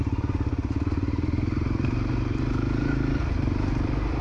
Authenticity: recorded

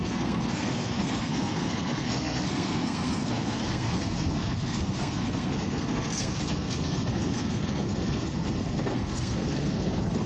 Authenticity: remade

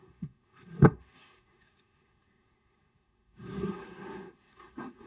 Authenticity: remade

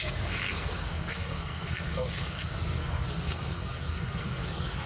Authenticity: remade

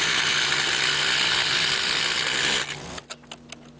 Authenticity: recorded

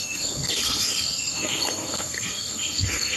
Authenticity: remade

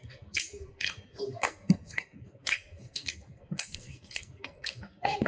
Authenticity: remade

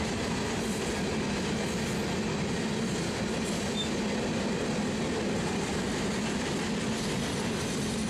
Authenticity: recorded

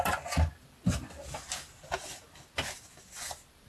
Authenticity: recorded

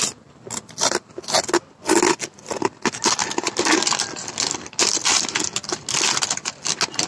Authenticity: recorded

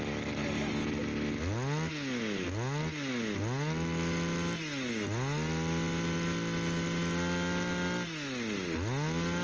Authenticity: recorded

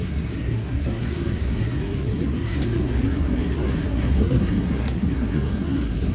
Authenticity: remade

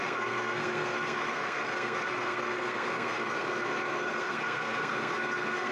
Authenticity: remade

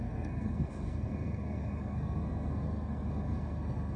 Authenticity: remade